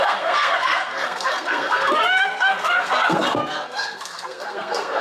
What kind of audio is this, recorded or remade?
remade